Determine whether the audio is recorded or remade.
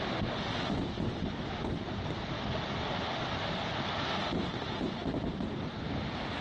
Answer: recorded